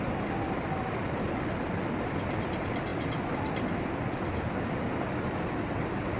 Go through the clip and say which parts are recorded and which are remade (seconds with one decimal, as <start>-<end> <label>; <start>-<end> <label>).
0.0-6.2 recorded